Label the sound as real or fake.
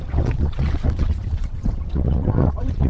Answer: fake